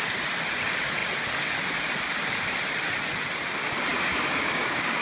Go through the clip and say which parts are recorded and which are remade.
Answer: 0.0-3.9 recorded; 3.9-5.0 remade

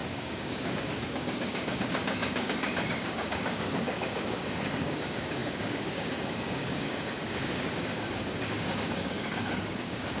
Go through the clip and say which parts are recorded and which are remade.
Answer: 0.0-10.2 remade

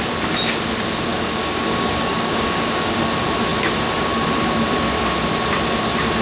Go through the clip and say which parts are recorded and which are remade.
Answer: 0.0-1.1 recorded; 1.1-3.0 remade; 3.0-6.2 recorded

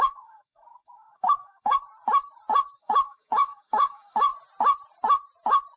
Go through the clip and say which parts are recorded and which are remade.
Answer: 0.0-1.8 remade; 1.8-2.8 recorded; 2.8-4.3 remade; 4.3-5.8 recorded